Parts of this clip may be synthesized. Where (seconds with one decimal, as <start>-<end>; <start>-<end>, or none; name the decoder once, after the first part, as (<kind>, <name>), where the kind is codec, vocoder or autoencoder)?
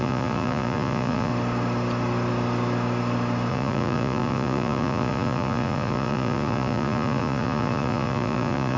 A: 0.0-1.3 (vocoder, Vocos); 3.5-8.8